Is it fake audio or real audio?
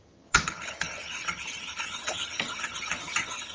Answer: fake